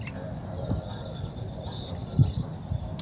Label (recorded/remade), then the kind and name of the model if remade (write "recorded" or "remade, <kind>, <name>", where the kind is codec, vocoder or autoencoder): recorded